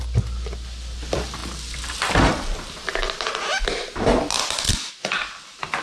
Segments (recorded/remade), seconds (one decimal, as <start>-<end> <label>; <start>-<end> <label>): 0.0-5.8 recorded